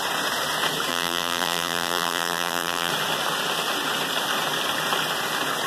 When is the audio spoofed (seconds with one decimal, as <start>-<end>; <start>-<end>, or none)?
0.9-2.9